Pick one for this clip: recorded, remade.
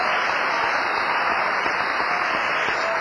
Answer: recorded